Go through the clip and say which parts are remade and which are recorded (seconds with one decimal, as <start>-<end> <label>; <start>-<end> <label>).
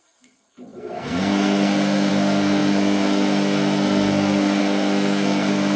0.0-5.8 remade